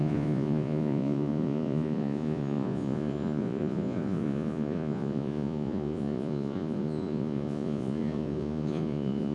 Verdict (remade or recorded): remade